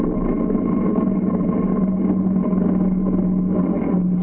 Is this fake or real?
real